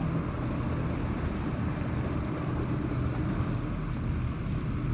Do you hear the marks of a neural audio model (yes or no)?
no